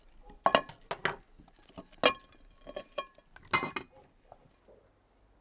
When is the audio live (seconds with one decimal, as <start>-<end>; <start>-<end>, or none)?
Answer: 0.0-5.4